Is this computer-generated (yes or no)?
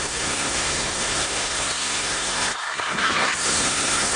yes